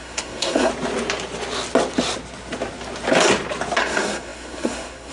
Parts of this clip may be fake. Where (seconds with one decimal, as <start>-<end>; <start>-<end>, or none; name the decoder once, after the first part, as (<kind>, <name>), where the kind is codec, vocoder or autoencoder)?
0.0-0.7 (codec, SNAC); 3.8-5.1